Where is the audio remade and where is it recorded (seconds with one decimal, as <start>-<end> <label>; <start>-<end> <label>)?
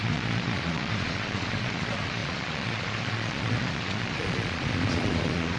0.0-5.6 remade